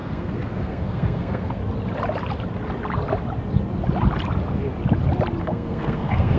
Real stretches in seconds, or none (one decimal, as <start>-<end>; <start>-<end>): 1.6-5.4

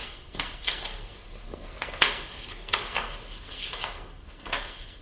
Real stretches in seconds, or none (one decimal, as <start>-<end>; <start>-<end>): none

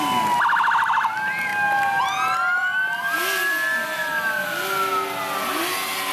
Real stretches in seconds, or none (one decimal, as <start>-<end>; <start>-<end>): 0.0-6.1

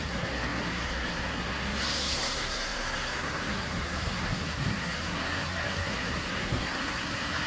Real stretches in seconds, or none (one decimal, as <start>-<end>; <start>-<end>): none

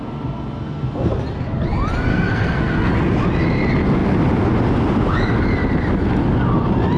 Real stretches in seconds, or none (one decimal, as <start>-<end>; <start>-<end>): 0.0-2.1; 2.9-7.0

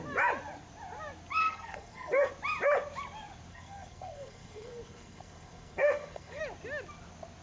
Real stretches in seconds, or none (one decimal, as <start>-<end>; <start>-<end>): 0.0-1.4; 2.3-3.5; 6.4-7.4

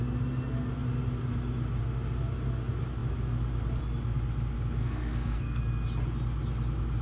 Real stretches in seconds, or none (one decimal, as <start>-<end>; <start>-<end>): 0.0-4.8; 5.6-7.0

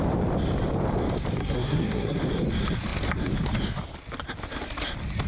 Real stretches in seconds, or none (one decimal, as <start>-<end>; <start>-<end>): 0.0-1.4; 2.2-5.3